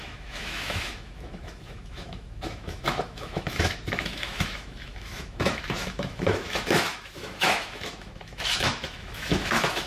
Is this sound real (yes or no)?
no